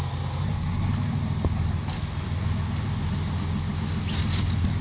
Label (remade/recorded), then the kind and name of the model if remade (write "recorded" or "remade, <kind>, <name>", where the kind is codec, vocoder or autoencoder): recorded